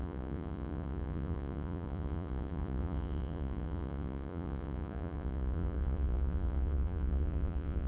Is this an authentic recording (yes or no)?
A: no